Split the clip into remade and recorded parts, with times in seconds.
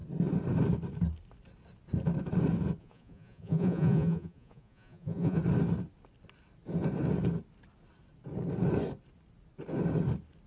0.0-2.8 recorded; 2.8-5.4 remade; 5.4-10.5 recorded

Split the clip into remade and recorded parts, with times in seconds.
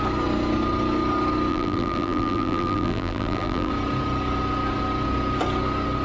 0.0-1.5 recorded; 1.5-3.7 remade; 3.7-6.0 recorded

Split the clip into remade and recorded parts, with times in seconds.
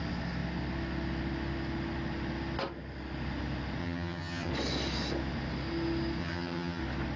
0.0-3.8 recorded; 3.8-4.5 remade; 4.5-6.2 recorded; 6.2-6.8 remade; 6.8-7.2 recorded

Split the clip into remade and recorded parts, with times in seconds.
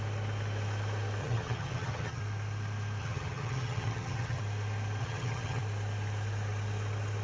0.0-1.2 recorded; 1.2-2.2 remade; 2.2-3.0 recorded; 3.0-4.4 remade; 4.4-5.0 recorded; 5.0-5.6 remade; 5.6-7.2 recorded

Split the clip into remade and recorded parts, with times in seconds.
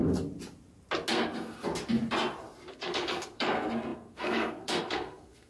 0.0-1.1 recorded; 1.1-1.6 remade; 1.6-2.7 recorded; 2.7-5.5 remade